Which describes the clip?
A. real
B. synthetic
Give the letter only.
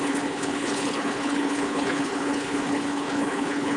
B